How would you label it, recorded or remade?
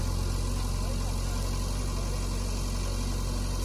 recorded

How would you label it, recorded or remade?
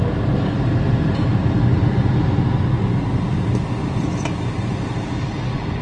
recorded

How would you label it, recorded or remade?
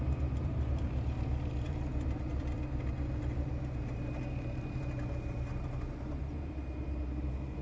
remade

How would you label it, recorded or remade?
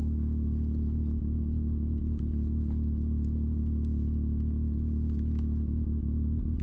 recorded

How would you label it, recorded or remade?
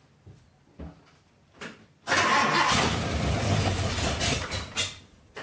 recorded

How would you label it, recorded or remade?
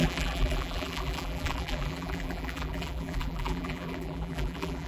remade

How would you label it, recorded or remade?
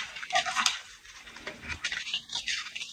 recorded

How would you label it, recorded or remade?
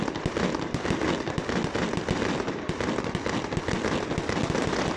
recorded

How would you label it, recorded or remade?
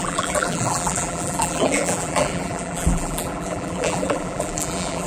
remade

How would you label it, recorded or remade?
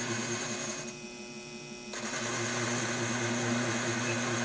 recorded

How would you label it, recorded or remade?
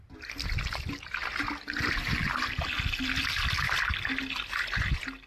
recorded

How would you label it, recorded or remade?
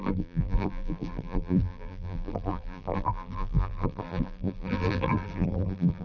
remade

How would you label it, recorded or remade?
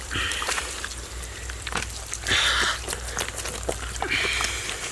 recorded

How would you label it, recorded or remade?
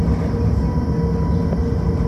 recorded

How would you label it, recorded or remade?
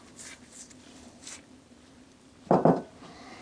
remade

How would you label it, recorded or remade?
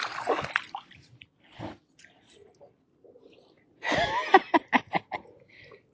recorded